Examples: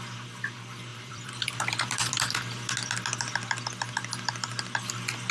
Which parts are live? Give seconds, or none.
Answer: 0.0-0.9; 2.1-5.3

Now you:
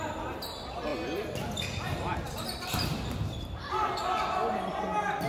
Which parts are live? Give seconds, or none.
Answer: 0.0-0.9; 3.7-5.3

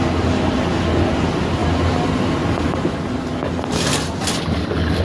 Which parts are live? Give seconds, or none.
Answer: 0.0-5.0

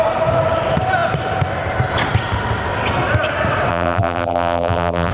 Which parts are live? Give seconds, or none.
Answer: 0.0-3.7